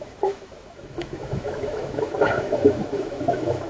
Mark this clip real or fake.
fake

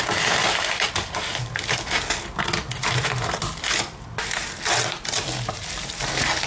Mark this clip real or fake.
real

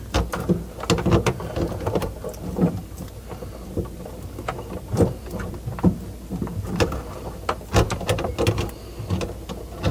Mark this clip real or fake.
real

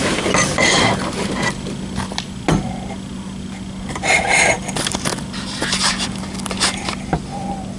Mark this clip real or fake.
real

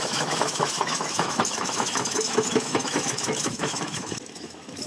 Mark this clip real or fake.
fake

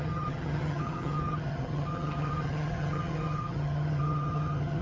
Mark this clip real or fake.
fake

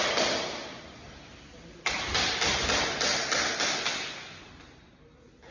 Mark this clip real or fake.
real